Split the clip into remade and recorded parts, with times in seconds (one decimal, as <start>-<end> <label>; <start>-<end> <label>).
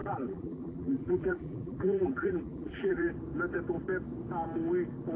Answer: 0.0-3.1 remade; 3.1-5.2 recorded